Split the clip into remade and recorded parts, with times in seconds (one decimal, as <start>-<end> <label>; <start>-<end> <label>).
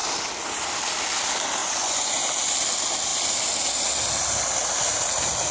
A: 0.0-1.6 recorded; 1.6-2.2 remade; 2.2-5.5 recorded